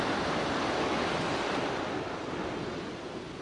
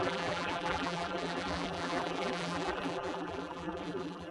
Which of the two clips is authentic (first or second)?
first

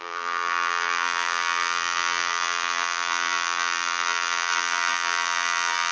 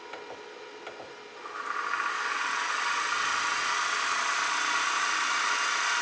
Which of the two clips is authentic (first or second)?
second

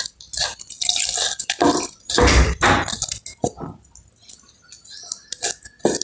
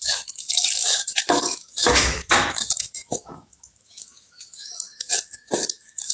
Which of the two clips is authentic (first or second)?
first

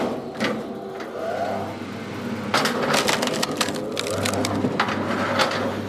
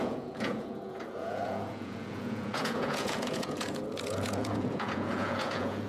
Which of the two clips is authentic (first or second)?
first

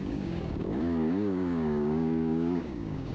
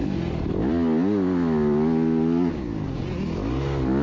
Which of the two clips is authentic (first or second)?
second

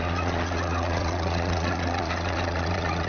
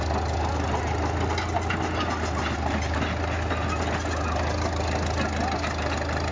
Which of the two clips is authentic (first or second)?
second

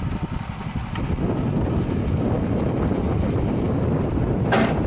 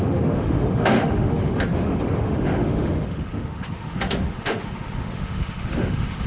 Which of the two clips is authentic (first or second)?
first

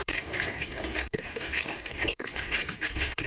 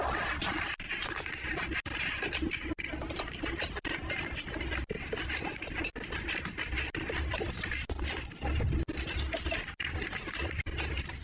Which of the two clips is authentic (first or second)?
second